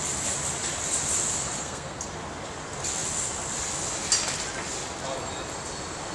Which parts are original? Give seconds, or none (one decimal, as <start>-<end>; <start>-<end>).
0.0-1.6; 2.1-6.1